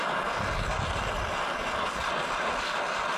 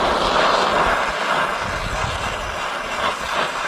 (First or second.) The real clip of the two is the second